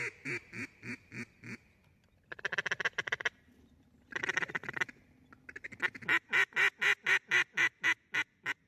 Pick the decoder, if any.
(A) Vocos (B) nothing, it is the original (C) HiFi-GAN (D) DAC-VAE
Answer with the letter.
B